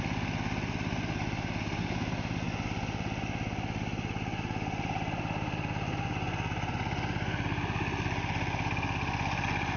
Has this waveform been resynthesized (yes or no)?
no